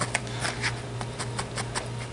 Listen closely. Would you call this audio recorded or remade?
recorded